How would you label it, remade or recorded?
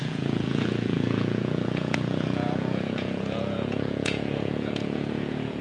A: remade